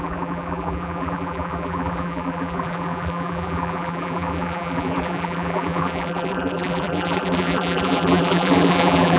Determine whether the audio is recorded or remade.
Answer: remade